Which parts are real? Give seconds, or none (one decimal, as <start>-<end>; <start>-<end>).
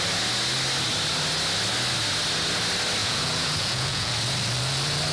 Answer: 0.0-3.0; 4.1-5.1